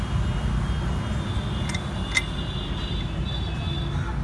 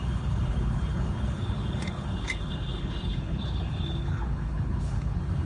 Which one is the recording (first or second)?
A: first